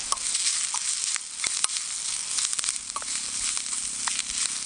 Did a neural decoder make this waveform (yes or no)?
no